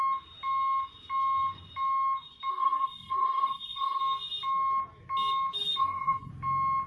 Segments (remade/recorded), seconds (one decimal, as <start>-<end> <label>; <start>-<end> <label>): 0.0-2.5 recorded; 2.5-4.0 remade; 4.0-5.8 recorded; 5.8-6.3 remade; 6.3-6.9 recorded